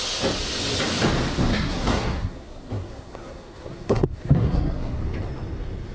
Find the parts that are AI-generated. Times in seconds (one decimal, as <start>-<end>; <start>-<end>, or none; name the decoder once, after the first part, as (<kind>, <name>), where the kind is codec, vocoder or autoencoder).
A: 1.5-5.0 (codec, SNAC)